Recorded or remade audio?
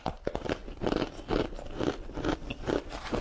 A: recorded